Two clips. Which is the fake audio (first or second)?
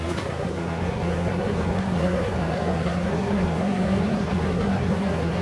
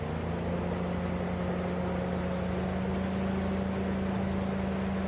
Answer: first